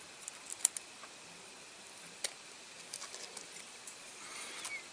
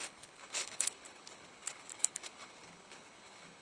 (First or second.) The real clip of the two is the first